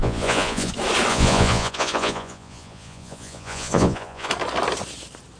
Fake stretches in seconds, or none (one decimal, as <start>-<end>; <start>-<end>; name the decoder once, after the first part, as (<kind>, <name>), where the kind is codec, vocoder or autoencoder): 0.0-0.7 (vocoder, Vocos); 1.1-4.3